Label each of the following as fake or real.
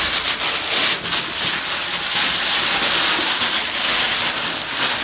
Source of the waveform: real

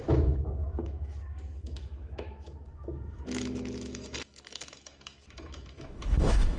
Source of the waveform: fake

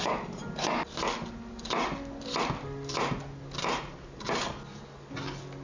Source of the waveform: real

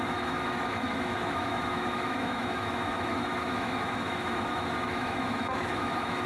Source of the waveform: fake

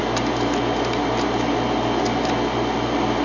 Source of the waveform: real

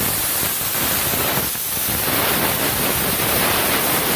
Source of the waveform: real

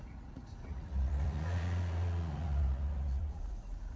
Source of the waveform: fake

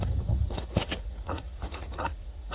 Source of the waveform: fake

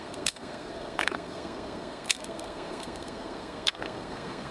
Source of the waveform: fake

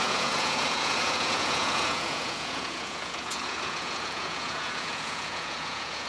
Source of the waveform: fake